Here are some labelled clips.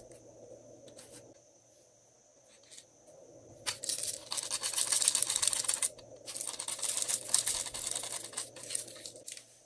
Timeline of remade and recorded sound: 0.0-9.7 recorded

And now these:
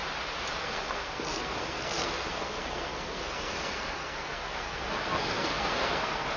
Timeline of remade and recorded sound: 0.0-0.6 recorded; 0.6-6.4 remade